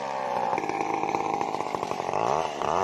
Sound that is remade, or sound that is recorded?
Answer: remade